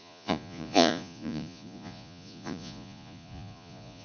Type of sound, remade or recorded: remade